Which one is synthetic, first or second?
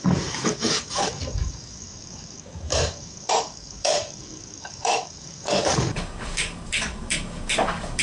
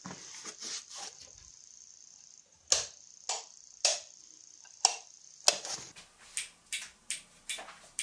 first